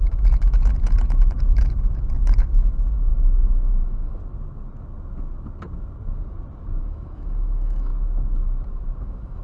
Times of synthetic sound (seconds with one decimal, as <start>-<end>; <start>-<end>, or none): 0.0-4.2; 6.8-7.9; 9.0-9.4